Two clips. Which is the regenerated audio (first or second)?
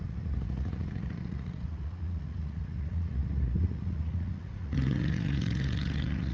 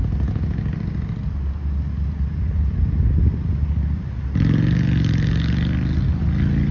first